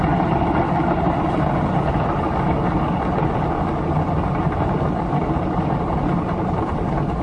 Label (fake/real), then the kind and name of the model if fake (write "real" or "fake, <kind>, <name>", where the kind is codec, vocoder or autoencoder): real